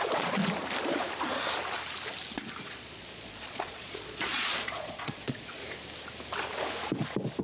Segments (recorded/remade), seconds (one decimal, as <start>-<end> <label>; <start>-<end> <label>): 0.0-0.4 remade; 0.4-2.6 recorded; 2.6-5.6 remade; 5.6-7.4 recorded